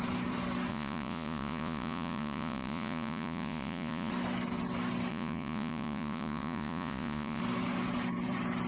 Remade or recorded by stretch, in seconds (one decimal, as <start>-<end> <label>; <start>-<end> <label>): 0.0-0.7 recorded; 0.7-4.1 remade; 4.1-5.1 recorded; 5.1-7.4 remade; 7.4-8.7 recorded